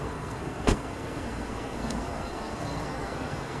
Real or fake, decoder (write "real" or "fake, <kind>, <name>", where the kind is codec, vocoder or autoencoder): fake, codec, SNAC